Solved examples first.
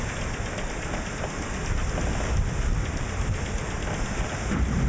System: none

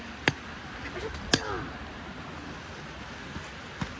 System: none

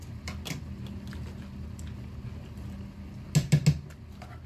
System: none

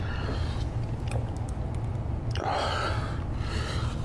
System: none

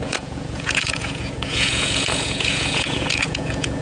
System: vocoder, Vocos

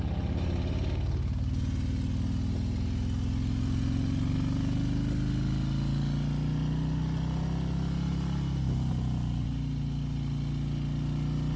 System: none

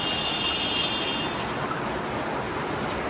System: none